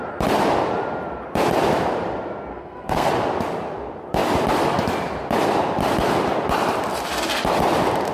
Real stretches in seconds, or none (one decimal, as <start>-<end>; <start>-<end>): 0.0-2.5; 3.1-8.1